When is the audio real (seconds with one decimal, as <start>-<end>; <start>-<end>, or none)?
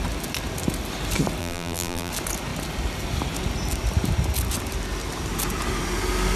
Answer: 0.0-1.4; 2.1-6.4